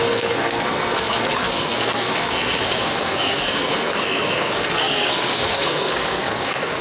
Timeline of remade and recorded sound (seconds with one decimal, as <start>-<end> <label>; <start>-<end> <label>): 0.0-6.8 remade